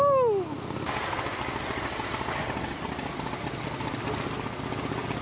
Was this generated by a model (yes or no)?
no